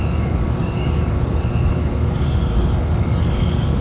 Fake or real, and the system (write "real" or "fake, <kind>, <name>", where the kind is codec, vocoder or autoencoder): fake, codec, DAC